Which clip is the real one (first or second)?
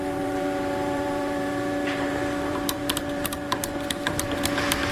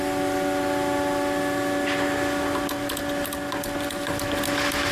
second